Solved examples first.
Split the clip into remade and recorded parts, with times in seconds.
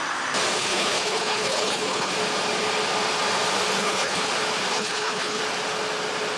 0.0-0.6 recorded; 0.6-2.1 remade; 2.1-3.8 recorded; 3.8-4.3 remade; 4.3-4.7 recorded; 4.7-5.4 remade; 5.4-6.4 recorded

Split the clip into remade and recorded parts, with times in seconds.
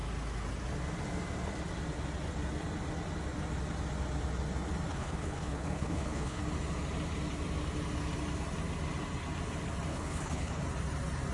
0.0-4.9 recorded; 4.9-6.4 remade; 6.4-9.9 recorded; 9.9-10.6 remade; 10.6-11.3 recorded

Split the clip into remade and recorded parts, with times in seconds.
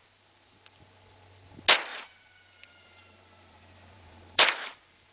0.0-1.9 recorded; 1.9-5.1 remade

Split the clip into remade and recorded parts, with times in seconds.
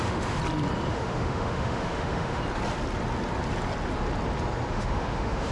0.0-0.4 remade; 0.4-0.9 recorded; 0.9-2.4 remade; 2.4-4.7 recorded; 4.7-5.5 remade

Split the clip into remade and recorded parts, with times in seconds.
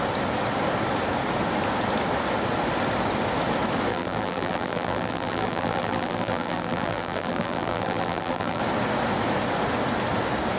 0.0-3.9 recorded; 3.9-8.6 remade; 8.6-10.6 recorded